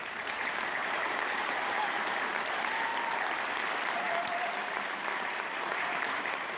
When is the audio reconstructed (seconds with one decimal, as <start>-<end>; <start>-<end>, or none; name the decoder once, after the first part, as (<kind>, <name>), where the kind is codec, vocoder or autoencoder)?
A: 0.0-2.9 (vocoder, BigVGAN v2); 3.9-6.6